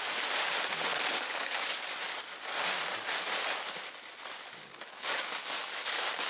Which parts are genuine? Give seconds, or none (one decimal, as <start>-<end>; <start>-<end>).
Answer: 0.0-1.1; 1.7-4.6